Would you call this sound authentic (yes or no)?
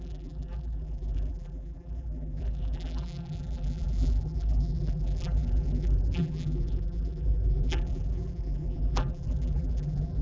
no